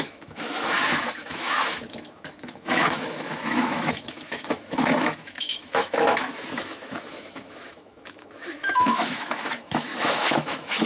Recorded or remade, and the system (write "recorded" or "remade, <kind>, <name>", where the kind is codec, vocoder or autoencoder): remade, autoencoder, DAC-VAE